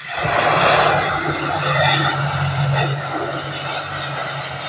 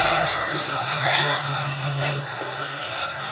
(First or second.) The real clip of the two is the first